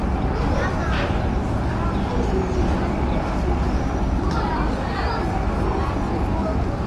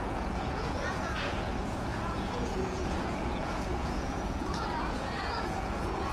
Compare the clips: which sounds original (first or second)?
first